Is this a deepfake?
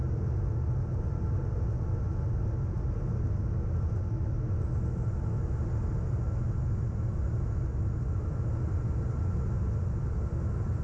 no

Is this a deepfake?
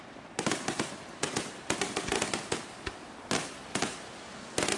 no